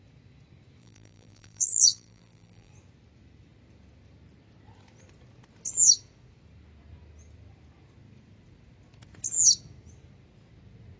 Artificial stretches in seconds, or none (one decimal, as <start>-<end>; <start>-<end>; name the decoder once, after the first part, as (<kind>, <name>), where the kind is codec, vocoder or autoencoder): 0.8-2.7 (vocoder, BigVGAN v2)